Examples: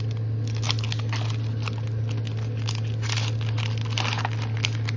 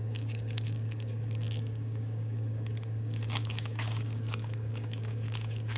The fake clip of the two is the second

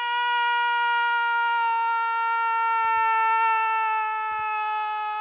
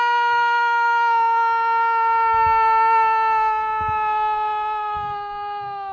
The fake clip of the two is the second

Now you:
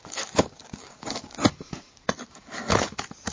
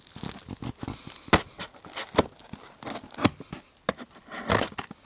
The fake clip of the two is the first